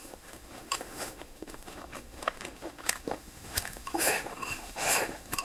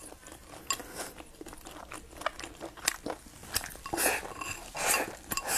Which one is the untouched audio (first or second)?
second